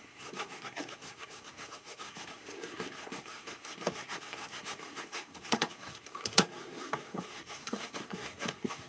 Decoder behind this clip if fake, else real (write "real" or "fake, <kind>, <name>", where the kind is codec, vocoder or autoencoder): fake, codec, SNAC